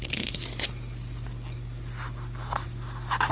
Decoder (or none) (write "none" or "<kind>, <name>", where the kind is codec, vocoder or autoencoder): none